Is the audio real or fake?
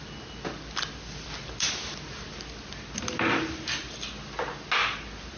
real